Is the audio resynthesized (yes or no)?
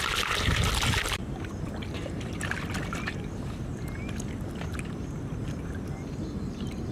no